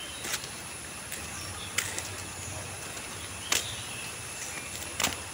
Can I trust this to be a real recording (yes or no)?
yes